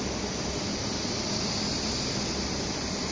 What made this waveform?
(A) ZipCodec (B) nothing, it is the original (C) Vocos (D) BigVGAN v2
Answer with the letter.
B